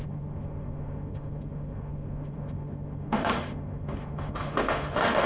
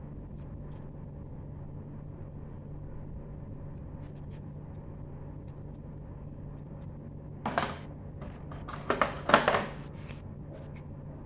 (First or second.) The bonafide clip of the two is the second